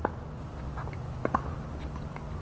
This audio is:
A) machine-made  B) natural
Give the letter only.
B